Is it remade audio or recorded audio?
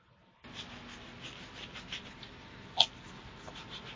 recorded